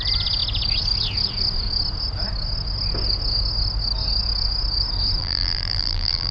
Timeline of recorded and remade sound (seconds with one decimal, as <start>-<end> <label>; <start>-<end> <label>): 0.0-5.2 recorded; 5.2-6.3 remade